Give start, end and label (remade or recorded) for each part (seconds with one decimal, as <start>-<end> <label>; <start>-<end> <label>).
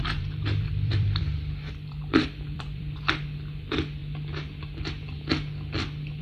0.0-4.0 remade; 4.0-6.2 recorded